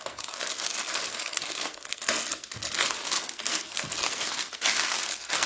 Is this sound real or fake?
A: fake